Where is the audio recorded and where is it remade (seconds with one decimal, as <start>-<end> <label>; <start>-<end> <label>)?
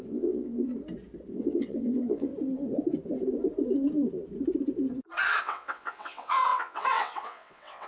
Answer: 0.0-0.7 remade; 0.7-1.3 recorded; 1.3-2.3 remade; 2.3-5.4 recorded; 5.4-7.9 remade